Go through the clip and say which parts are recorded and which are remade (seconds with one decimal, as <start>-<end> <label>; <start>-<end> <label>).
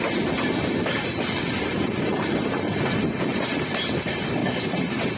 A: 0.0-1.1 recorded; 1.1-3.8 remade; 3.8-4.4 recorded; 4.4-5.2 remade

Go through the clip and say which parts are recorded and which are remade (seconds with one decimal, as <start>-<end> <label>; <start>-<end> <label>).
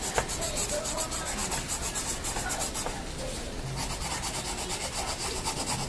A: 0.0-5.9 recorded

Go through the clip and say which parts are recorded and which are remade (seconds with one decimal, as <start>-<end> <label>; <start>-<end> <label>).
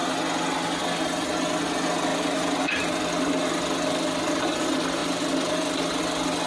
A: 0.0-2.1 recorded; 2.1-3.0 remade; 3.0-6.5 recorded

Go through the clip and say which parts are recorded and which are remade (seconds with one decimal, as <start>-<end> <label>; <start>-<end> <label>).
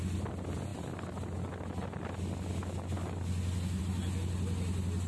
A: 0.0-5.1 recorded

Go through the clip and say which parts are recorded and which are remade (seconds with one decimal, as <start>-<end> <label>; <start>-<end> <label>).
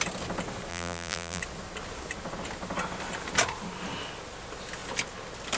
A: 0.0-0.7 recorded; 0.7-1.4 remade; 1.4-5.6 recorded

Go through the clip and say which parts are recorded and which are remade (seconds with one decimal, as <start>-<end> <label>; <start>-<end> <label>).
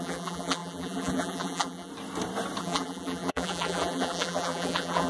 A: 0.0-1.9 remade; 1.9-2.6 recorded; 2.6-5.1 remade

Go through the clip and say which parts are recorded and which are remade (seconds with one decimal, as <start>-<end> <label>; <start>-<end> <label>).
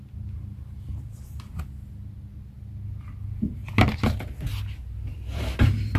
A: 0.0-1.5 remade; 1.5-5.1 recorded; 5.1-6.0 remade